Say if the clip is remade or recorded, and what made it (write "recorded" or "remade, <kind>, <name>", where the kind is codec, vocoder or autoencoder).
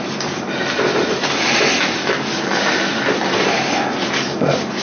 recorded